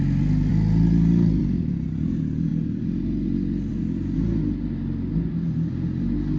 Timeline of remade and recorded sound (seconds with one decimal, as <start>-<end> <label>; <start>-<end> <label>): 0.0-6.4 recorded